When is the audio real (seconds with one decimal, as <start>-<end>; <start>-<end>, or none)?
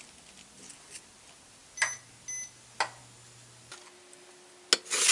0.0-5.1